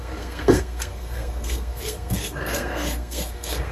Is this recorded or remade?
remade